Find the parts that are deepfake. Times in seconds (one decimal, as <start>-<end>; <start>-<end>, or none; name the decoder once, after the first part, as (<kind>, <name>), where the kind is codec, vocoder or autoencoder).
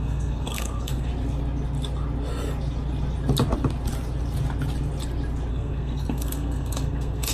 0.0-1.1 (codec, SNAC); 5.5-7.3